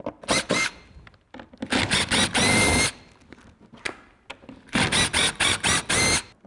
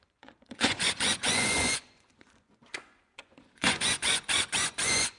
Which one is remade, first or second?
second